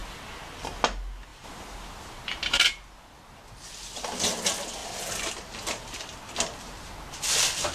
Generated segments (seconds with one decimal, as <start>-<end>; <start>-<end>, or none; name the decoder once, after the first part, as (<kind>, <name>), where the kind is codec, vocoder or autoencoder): 1.3-3.2 (vocoder, BigVGAN v2)